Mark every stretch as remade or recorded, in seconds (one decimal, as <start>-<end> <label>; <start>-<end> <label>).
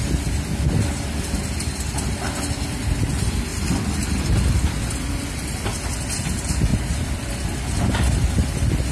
0.0-8.9 recorded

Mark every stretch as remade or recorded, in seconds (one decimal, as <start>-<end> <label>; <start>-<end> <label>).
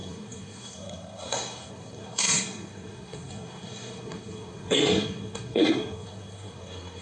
0.0-7.0 remade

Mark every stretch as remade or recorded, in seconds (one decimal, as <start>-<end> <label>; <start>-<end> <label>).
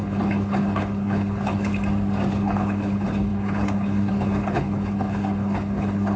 0.0-1.7 remade; 1.7-2.3 recorded; 2.3-6.2 remade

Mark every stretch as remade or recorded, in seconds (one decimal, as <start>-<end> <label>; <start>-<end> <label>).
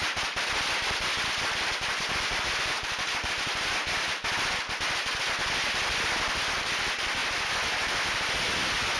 0.0-9.0 recorded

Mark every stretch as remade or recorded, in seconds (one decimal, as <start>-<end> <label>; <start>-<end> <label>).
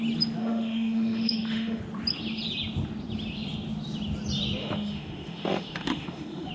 0.0-0.4 recorded; 0.4-1.8 remade; 1.8-4.6 recorded; 4.6-6.5 remade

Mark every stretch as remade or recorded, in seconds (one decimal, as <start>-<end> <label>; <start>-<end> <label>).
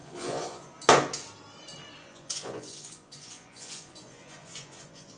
0.0-0.7 remade; 0.7-2.0 recorded; 2.0-5.2 remade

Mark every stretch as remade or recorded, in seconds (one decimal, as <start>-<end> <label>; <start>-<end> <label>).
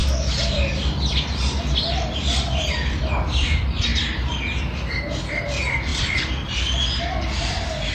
0.0-7.9 recorded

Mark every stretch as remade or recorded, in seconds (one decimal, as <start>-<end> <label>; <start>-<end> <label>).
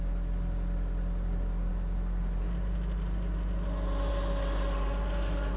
0.0-5.6 recorded